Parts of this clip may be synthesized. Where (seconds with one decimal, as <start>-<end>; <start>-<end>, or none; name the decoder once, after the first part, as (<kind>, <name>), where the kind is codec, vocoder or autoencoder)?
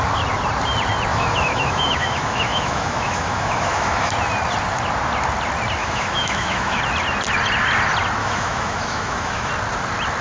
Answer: 1.1-4.1 (autoencoder, DAC-VAE); 5.8-6.8; 8.2-9.5